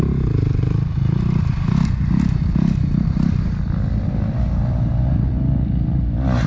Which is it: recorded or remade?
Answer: recorded